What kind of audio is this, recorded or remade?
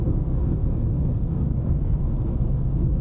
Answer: remade